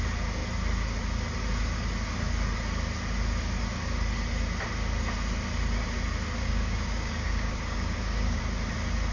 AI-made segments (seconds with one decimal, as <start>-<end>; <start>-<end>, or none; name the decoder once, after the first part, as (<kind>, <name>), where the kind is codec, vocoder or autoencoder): 6.4-8.4 (codec, DAC)